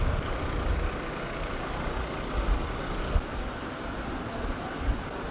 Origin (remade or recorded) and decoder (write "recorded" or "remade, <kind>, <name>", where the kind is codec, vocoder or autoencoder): recorded